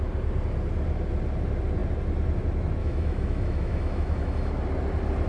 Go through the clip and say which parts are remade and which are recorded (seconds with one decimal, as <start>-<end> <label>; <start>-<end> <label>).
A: 0.0-2.8 recorded; 2.8-4.5 remade; 4.5-5.3 recorded